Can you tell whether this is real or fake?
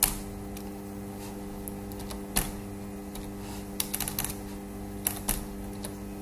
real